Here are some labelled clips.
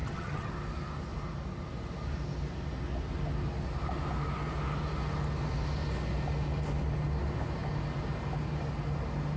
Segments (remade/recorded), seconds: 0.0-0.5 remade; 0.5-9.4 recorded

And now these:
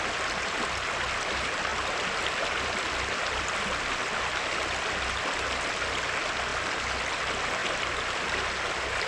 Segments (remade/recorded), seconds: 0.0-1.7 recorded; 1.7-3.4 remade; 3.4-9.1 recorded